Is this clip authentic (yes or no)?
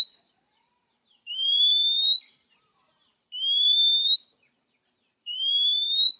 no